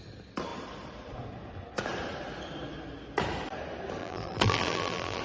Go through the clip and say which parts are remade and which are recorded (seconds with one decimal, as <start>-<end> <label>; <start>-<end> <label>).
0.0-4.0 recorded; 4.0-5.2 remade